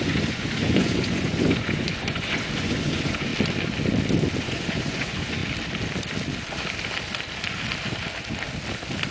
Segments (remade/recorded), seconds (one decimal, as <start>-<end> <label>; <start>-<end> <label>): 0.0-3.3 remade; 3.3-4.4 recorded; 4.4-5.4 remade; 5.4-9.1 recorded